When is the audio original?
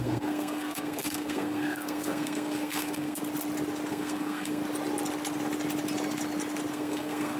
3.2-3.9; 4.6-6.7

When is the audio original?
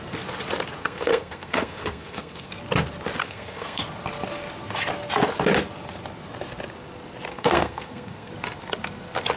0.0-0.8; 2.5-3.2; 3.8-7.3; 8.3-9.4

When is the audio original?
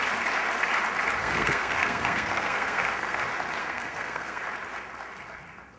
0.0-1.2; 3.2-3.6; 4.4-5.8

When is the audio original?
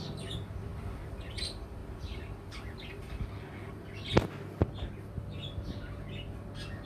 0.0-6.9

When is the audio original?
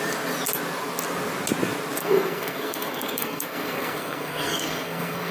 0.0-2.0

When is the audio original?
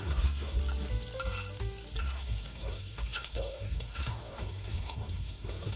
0.6-2.0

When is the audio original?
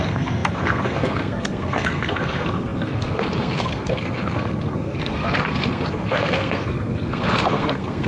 none